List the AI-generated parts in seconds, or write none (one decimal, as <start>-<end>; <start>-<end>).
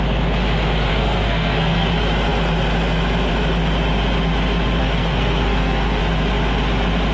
0.9-1.9; 4.8-6.0